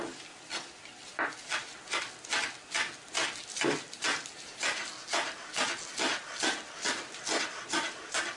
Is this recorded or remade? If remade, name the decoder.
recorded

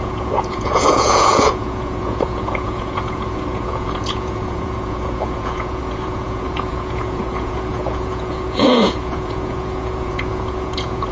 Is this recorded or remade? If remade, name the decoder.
remade, vocoder, Vocos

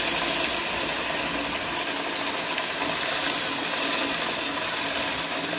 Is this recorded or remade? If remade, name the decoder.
recorded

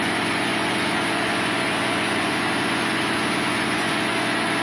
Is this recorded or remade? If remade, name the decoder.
remade, vocoder, Vocos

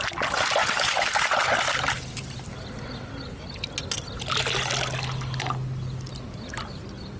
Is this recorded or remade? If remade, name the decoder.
recorded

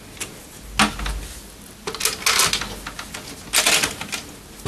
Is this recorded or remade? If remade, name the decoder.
recorded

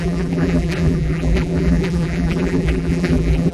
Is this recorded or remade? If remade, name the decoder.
remade, vocoder, BigVGAN v2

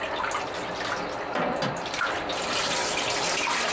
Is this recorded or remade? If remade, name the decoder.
recorded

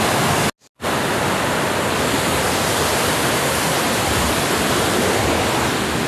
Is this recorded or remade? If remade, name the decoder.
recorded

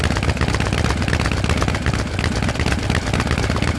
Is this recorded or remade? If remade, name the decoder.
recorded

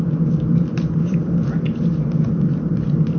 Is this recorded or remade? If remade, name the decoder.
remade, vocoder, BigVGAN v2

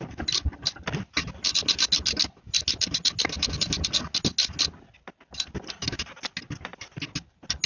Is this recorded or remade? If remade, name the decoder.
recorded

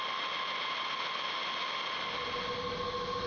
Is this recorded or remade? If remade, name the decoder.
recorded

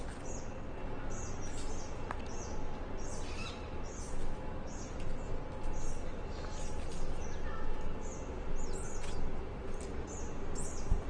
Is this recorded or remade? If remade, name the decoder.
recorded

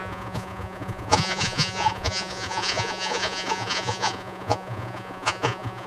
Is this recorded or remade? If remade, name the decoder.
remade, vocoder, Vocos